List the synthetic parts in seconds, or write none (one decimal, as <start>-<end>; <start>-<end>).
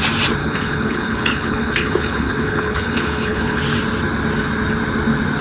0.4-3.6